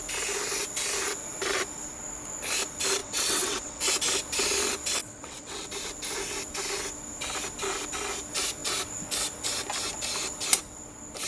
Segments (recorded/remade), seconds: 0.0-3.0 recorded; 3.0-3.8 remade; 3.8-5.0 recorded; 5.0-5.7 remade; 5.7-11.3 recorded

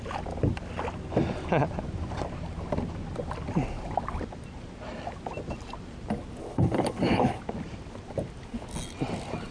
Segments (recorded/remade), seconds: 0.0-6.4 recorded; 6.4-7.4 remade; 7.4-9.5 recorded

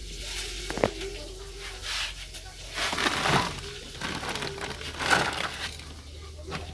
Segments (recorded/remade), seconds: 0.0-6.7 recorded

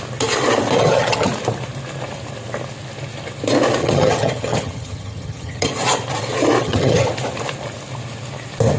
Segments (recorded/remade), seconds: 0.0-0.8 recorded; 0.8-1.3 remade; 1.3-3.8 recorded; 3.8-5.7 remade; 5.7-6.6 recorded; 6.6-7.1 remade; 7.1-8.8 recorded